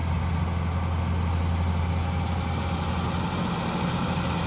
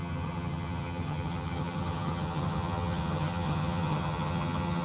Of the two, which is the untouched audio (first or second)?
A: first